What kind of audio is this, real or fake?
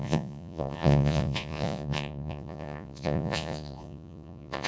fake